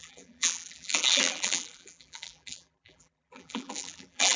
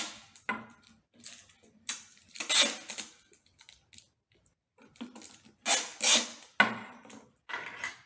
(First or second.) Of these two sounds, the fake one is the first